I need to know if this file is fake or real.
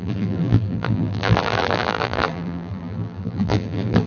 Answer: fake